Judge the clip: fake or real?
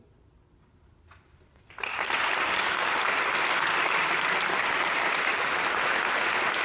real